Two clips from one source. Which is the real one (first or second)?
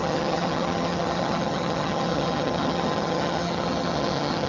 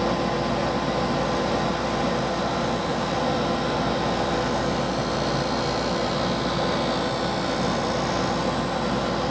second